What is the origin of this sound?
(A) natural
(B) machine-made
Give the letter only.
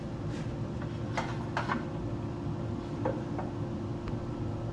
A